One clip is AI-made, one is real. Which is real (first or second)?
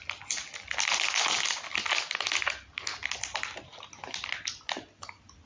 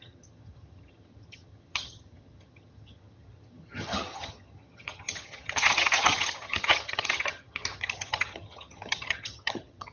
first